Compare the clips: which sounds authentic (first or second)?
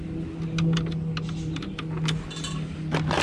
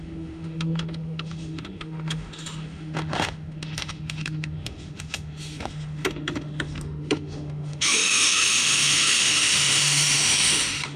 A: first